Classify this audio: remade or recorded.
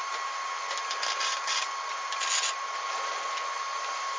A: recorded